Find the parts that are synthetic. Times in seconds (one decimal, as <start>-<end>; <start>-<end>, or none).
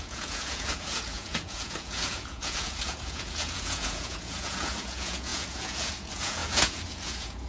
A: 0.0-7.5